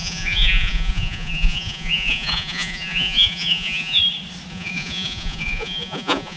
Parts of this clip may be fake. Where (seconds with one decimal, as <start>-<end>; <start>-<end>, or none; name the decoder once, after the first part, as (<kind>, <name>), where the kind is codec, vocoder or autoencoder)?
0.0-4.0 (vocoder, Vocos); 4.5-6.4